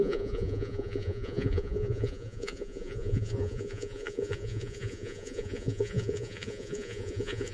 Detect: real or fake fake